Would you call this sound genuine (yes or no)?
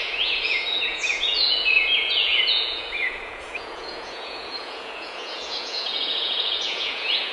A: no